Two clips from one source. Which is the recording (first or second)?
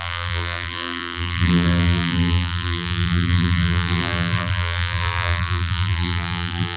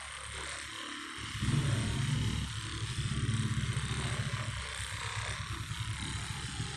second